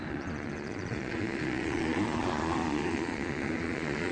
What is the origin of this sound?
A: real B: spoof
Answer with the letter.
B